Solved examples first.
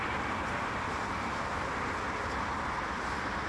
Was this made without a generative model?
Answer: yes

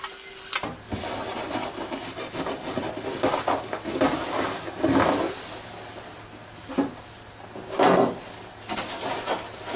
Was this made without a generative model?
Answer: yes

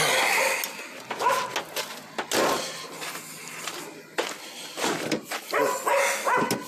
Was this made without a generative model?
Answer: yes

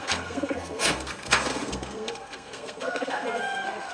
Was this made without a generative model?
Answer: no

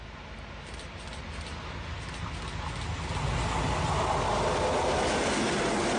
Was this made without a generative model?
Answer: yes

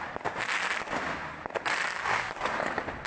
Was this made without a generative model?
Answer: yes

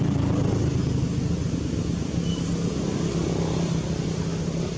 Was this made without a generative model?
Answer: yes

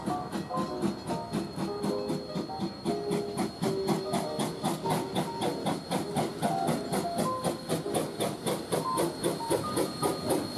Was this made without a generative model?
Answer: yes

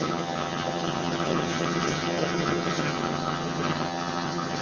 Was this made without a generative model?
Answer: no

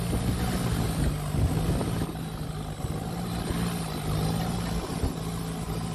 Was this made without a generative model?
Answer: yes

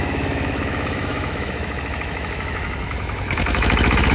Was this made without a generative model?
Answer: no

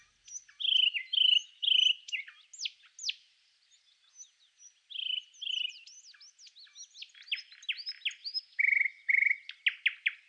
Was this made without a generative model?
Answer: yes